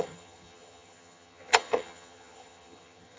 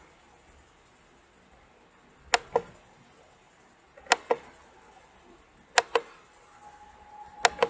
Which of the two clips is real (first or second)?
second